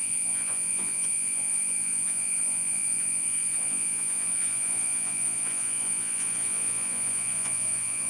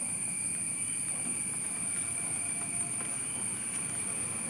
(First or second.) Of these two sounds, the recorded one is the second